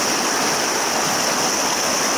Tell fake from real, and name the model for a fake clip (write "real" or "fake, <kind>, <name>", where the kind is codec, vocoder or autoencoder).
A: real